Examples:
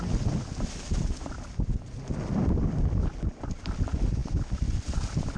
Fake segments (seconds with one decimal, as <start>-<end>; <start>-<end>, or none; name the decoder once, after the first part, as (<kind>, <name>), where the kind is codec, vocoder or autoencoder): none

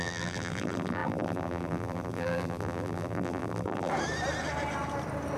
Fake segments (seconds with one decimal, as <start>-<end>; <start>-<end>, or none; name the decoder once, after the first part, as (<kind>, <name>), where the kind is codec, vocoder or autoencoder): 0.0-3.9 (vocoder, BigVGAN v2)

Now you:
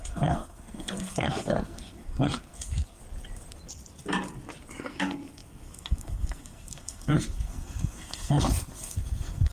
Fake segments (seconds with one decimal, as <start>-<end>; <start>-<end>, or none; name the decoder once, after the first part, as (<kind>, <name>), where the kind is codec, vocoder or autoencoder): 0.0-3.0 (codec, SNAC); 4.8-9.5

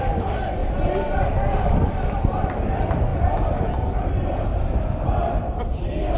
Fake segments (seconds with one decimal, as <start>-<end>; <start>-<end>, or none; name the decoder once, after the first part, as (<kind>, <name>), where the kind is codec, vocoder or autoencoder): 0.0-0.6 (vocoder, BigVGAN v2); 1.1-4.5; 5.1-6.2

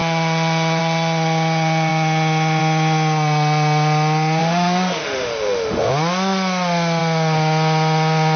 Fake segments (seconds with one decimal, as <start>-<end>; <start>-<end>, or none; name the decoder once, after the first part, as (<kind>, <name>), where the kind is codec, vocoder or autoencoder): 4.4-5.9 (autoencoder, DAC-VAE)